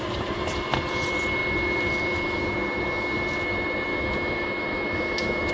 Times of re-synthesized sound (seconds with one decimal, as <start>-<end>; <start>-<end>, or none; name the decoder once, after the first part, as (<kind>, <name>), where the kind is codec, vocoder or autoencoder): 3.9-5.5 (autoencoder, DAC-VAE)